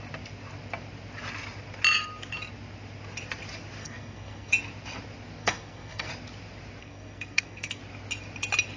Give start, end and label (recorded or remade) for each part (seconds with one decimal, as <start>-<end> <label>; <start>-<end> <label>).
0.0-3.8 recorded; 3.8-4.5 remade; 4.5-5.4 recorded; 5.4-6.1 remade; 6.1-6.8 recorded; 6.8-7.8 remade; 7.8-8.8 recorded